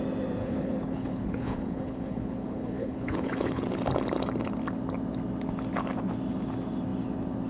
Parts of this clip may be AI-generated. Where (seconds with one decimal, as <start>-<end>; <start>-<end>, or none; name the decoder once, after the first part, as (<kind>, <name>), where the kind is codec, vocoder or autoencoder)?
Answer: 0.4-3.6 (codec, HILCodec)